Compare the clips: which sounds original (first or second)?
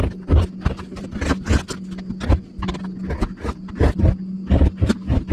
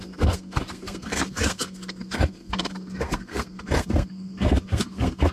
first